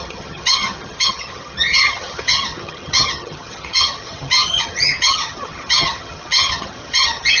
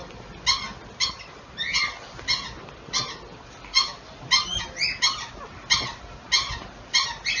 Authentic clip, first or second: second